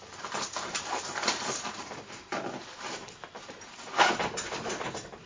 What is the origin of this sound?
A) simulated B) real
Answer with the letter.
A